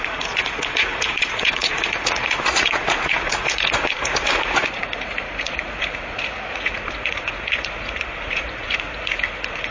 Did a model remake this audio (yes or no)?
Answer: yes